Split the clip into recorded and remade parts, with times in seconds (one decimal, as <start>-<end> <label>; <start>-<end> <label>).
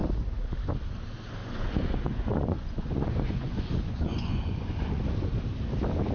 0.0-1.4 recorded; 1.4-5.0 remade; 5.0-6.1 recorded